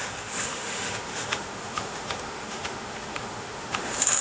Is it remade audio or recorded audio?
remade